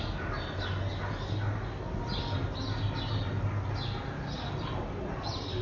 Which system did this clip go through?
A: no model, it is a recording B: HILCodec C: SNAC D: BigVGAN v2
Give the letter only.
A